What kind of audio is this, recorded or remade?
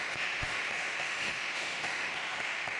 remade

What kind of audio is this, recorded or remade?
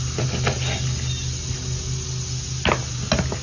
recorded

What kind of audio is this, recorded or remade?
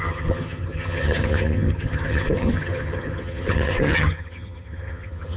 remade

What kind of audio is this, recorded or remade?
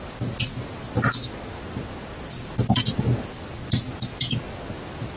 recorded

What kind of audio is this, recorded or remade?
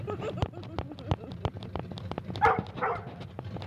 recorded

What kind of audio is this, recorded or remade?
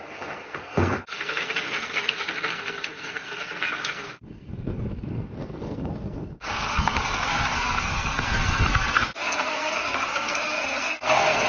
remade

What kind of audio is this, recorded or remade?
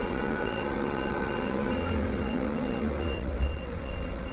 remade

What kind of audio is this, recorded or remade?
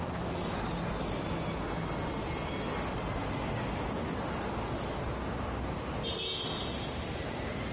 recorded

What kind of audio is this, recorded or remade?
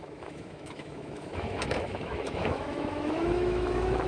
remade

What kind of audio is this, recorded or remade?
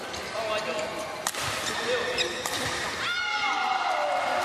recorded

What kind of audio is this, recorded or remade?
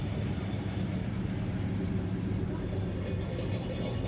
recorded